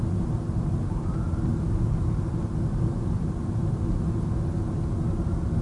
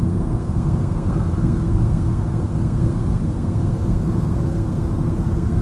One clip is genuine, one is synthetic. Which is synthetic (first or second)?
second